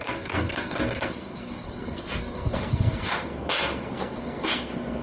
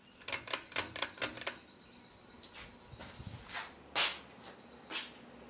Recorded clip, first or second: second